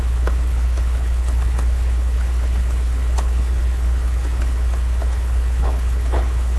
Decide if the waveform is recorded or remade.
remade